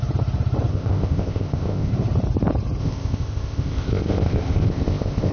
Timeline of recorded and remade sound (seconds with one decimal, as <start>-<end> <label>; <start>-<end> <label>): 0.0-0.7 recorded; 0.7-1.9 remade; 1.9-2.8 recorded; 2.8-5.3 remade